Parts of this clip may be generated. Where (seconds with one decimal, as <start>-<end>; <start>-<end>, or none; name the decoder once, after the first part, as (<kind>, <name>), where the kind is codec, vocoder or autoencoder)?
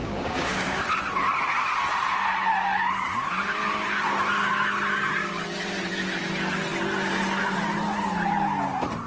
0.0-0.8 (codec, DAC)